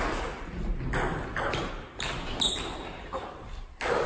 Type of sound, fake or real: real